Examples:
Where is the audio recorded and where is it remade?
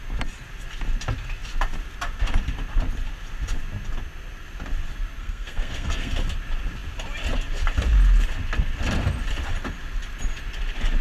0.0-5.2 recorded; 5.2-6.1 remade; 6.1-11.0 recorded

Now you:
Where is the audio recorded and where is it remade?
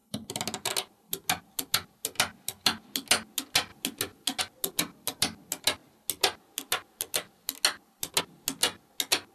0.0-9.3 recorded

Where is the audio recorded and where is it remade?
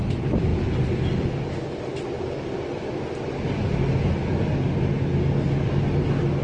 0.0-6.4 recorded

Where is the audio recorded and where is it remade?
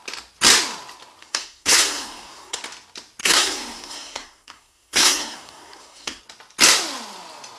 0.0-1.2 recorded; 1.2-2.6 remade; 2.6-3.2 recorded; 3.2-6.2 remade; 6.2-7.6 recorded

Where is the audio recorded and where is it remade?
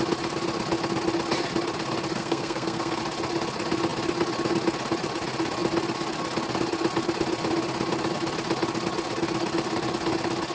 0.0-2.2 recorded; 2.2-3.0 remade; 3.0-10.5 recorded